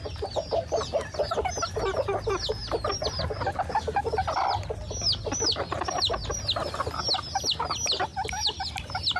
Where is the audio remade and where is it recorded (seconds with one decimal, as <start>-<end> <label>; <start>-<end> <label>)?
0.0-9.2 recorded